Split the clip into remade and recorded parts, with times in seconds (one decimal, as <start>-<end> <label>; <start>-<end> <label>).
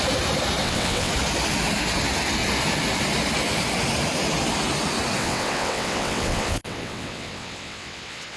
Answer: 0.0-0.6 recorded; 0.6-1.1 remade; 1.1-5.2 recorded; 5.2-8.4 remade